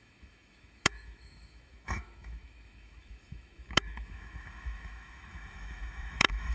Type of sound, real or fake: fake